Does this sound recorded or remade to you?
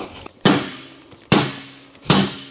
recorded